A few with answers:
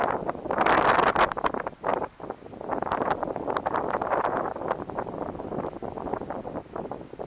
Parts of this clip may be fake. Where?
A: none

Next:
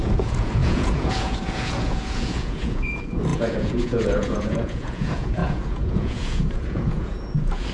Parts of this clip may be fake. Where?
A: 0.0-7.7 (vocoder, Vocos)

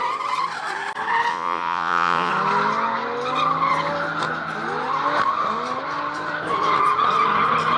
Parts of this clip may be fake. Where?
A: 1.3-2.3 (vocoder, Vocos)

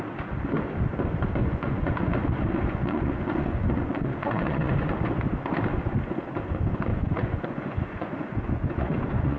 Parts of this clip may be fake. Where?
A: 1.4-4.9 (vocoder, Vocos); 6.9-9.4

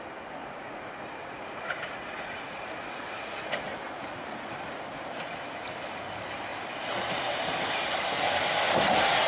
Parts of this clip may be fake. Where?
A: 0.4-3.3 (vocoder, Vocos)